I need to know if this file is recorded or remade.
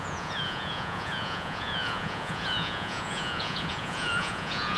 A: remade